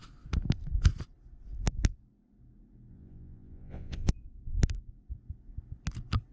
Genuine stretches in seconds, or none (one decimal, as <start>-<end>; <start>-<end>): 0.0-2.9; 4.1-6.3